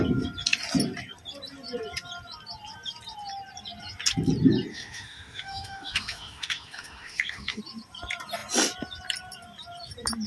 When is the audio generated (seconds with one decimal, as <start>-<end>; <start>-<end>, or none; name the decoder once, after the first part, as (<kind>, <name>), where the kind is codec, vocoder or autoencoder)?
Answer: 4.7-7.6 (autoencoder, DAC-VAE)